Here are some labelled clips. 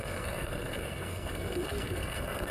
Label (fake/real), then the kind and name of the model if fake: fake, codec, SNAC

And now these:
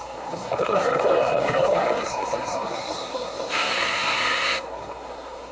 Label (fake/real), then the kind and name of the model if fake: fake, codec, SNAC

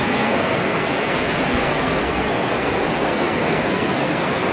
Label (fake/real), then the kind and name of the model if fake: fake, codec, SNAC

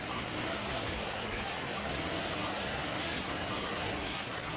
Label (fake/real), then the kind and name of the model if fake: fake, codec, SNAC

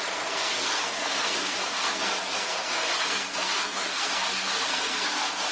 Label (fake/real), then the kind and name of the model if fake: fake, codec, SNAC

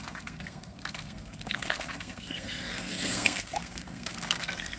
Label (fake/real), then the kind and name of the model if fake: fake, codec, SNAC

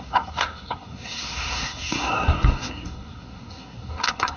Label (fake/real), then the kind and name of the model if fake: fake, codec, SNAC